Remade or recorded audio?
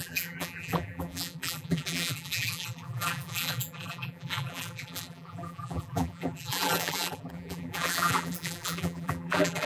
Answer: remade